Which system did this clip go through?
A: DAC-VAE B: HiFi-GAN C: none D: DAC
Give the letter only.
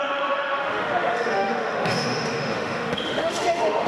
A